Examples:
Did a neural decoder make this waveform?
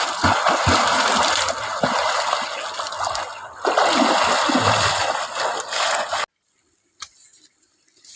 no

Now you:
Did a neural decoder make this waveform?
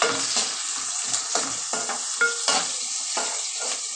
no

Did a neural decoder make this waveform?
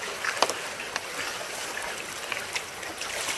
yes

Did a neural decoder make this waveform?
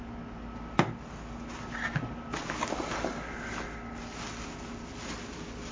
no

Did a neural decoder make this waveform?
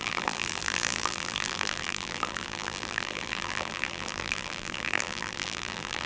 yes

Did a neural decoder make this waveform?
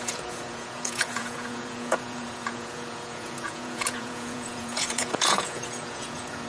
yes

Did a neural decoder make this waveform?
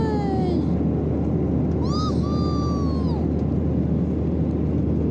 no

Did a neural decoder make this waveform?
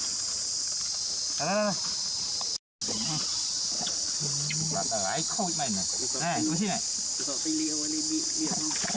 no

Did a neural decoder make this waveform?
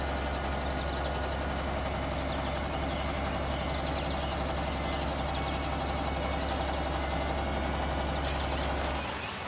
no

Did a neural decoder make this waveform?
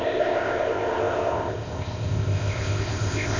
yes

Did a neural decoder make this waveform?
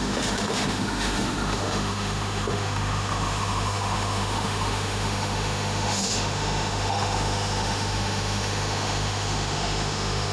yes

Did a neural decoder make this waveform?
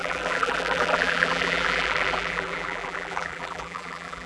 yes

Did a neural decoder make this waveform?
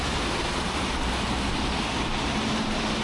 no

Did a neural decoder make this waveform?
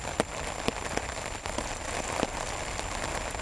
no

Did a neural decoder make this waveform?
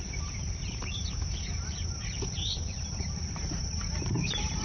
yes